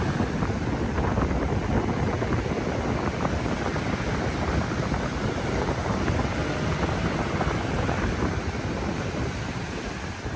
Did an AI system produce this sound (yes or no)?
no